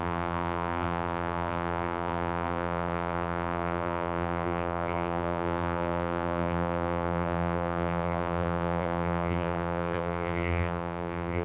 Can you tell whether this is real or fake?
fake